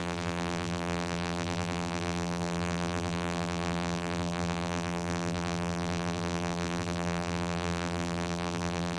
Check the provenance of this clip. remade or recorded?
remade